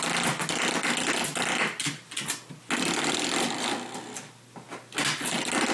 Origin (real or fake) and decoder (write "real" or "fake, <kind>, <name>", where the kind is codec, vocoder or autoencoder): real